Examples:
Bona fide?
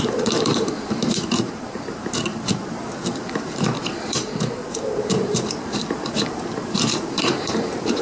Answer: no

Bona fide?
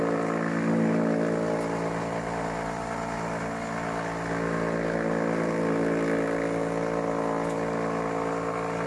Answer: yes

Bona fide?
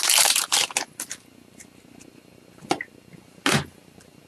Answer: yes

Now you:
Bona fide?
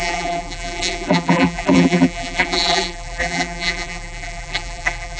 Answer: no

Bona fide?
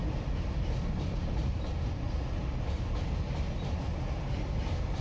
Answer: yes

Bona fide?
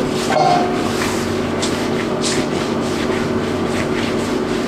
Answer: yes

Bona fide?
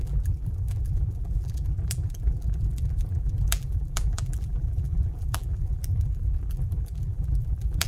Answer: no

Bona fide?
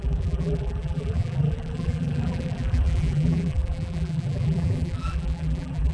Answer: no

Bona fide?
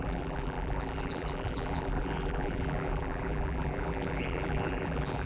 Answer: no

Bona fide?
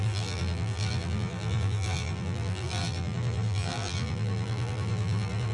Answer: no